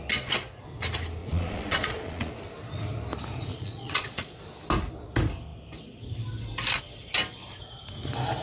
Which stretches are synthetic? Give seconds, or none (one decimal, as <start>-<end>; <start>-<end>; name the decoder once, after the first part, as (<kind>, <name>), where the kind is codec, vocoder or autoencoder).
1.2-2.3 (vocoder, Vocos); 3.5-4.4